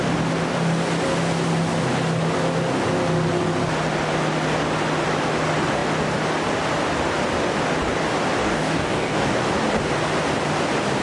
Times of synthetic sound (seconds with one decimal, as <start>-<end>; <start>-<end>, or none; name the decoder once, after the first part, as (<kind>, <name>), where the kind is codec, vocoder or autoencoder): 8.4-9.4 (codec, DAC)